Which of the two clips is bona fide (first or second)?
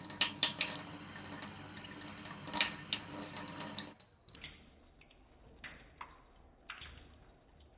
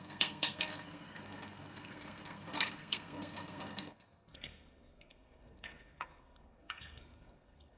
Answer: first